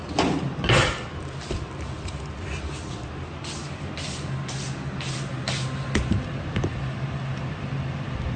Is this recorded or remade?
recorded